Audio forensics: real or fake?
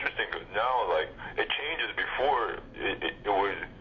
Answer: real